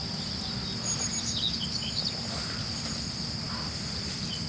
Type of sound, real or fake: real